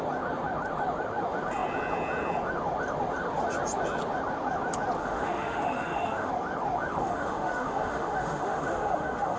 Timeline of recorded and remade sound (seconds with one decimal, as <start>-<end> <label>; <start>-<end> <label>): 0.0-5.0 recorded; 5.0-6.3 remade; 6.3-7.0 recorded; 7.0-9.4 remade